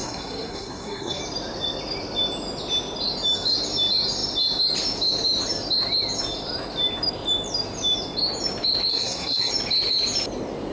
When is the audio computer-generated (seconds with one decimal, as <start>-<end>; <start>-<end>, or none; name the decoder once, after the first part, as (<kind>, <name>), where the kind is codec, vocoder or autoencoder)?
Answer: 0.0-1.2 (codec, SNAC); 8.9-9.5